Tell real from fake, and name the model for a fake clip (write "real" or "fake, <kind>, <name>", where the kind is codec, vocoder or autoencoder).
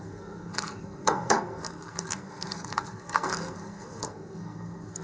fake, codec, SNAC